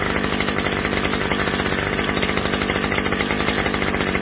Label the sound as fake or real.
real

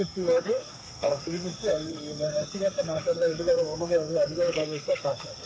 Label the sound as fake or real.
fake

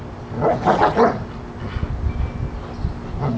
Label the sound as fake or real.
real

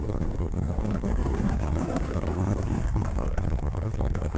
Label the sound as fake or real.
fake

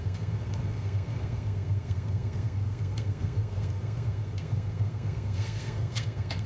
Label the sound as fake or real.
fake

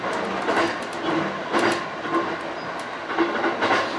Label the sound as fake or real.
real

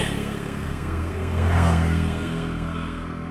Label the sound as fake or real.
fake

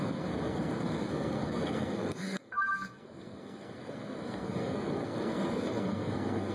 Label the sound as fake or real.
fake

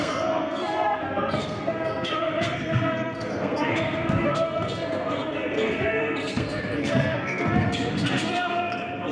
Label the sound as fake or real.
fake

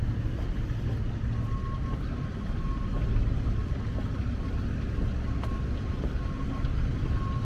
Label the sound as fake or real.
real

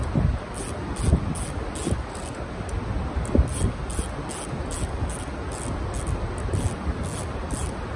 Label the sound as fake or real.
real